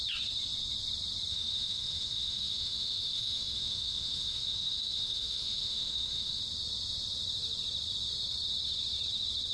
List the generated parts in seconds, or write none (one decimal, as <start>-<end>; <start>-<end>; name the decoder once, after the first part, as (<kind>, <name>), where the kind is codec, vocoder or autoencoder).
1.3-6.4 (autoencoder, DAC-VAE)

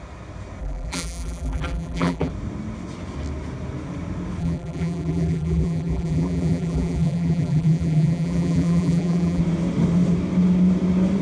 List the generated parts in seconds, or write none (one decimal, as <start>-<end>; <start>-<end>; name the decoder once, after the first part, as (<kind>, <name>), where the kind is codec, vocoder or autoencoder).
0.6-2.3 (vocoder, BigVGAN v2); 4.4-9.4

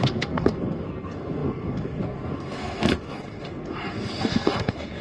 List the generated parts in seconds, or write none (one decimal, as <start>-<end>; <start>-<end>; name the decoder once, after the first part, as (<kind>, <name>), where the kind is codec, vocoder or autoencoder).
0.0-5.0 (codec, SNAC)

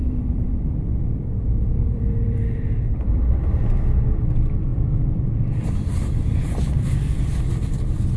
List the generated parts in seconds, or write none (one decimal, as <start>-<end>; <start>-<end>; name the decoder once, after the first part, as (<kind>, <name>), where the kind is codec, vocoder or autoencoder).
0.0-3.0 (vocoder, BigVGAN v2); 4.7-7.5

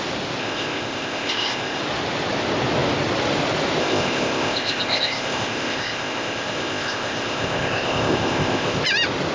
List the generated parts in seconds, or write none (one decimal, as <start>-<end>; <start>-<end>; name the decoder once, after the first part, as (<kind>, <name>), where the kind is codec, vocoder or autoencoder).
0.4-1.8 (codec, ZipCodec); 3.8-8.8

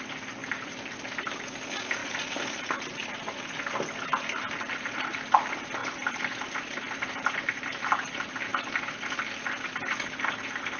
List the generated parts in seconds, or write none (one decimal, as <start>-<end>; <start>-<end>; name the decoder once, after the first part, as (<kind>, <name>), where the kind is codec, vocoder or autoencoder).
0.4-1.3 (vocoder, BigVGAN v2); 2.0-3.1; 5.8-7.8